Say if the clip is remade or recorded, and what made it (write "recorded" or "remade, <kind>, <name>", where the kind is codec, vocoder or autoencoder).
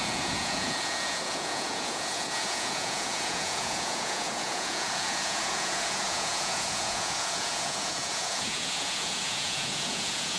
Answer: remade, vocoder, Vocos